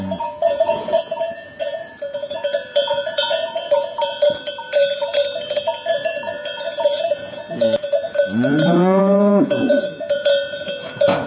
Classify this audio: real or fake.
fake